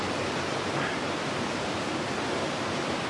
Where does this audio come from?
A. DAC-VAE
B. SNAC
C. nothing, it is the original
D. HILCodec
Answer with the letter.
C